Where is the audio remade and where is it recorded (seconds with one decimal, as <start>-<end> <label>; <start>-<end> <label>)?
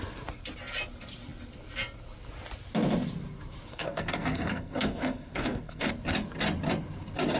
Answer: 0.0-3.7 recorded; 3.7-5.9 remade; 5.9-7.4 recorded